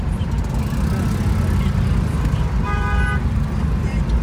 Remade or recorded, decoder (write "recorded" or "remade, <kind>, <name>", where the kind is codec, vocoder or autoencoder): recorded